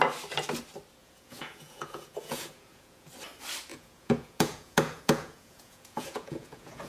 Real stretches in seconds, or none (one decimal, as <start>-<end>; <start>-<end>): 0.0-1.0; 3.1-3.7